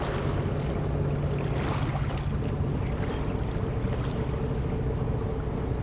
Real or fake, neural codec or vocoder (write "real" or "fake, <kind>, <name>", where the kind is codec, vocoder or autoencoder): real